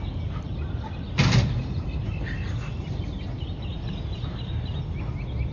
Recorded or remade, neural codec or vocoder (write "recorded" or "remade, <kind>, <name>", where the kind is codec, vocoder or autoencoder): recorded